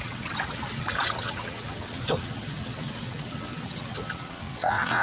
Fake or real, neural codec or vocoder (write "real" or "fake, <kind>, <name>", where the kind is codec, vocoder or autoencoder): fake, vocoder, WaveNeXt